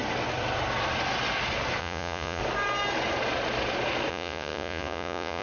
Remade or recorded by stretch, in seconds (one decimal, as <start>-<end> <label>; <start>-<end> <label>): 0.0-1.8 recorded; 1.8-2.4 remade; 2.4-4.1 recorded; 4.1-5.4 remade

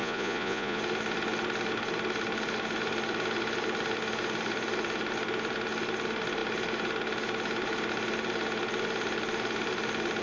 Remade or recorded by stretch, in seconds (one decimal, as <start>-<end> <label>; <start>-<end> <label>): 0.0-0.8 remade; 0.8-10.2 recorded

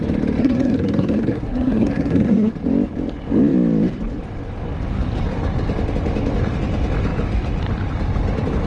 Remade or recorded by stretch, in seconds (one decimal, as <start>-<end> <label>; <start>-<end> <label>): 0.0-0.4 recorded; 0.4-2.5 remade; 2.5-8.7 recorded

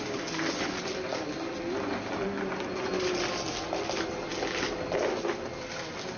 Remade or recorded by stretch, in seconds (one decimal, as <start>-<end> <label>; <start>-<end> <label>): 0.0-6.2 recorded

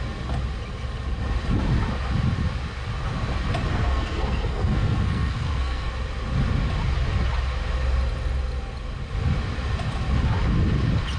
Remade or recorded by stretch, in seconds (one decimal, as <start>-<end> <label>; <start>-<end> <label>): 0.0-3.7 recorded; 3.7-5.9 remade; 5.9-11.2 recorded

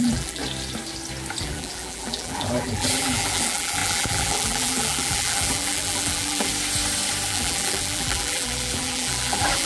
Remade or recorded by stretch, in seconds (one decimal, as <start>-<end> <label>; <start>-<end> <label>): 0.0-0.4 remade; 0.4-1.4 recorded; 1.4-6.5 remade; 6.5-7.3 recorded; 7.3-9.7 remade

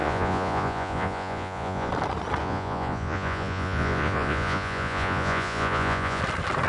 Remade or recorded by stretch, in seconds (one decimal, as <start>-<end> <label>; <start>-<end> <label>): 0.0-1.9 remade; 1.9-2.4 recorded; 2.4-6.2 remade; 6.2-6.7 recorded